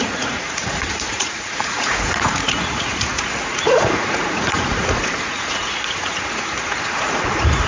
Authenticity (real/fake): fake